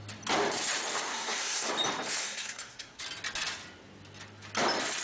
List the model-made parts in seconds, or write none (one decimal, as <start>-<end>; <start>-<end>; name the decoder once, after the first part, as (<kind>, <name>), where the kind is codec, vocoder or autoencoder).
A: 1.1-1.7 (codec, SNAC); 2.2-3.0